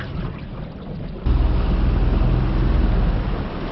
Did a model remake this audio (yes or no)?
no